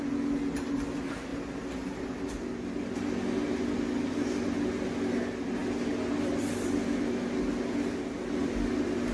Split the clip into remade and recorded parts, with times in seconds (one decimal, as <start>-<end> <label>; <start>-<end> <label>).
0.0-9.1 recorded

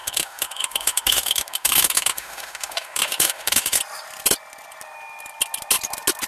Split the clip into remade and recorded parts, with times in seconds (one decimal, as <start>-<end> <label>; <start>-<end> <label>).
0.0-3.8 remade; 3.8-6.3 recorded

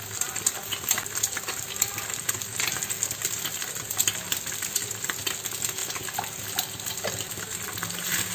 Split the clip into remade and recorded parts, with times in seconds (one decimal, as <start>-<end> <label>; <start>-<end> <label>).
0.0-8.3 recorded

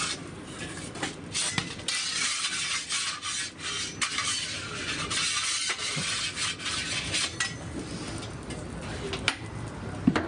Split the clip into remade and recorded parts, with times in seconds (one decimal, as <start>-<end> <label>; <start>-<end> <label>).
0.0-10.3 recorded

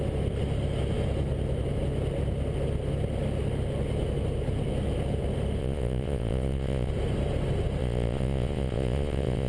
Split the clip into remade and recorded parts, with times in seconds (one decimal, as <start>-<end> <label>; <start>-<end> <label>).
0.0-5.6 recorded; 5.6-6.9 remade; 6.9-7.8 recorded; 7.8-9.5 remade